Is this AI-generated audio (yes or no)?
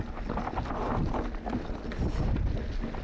no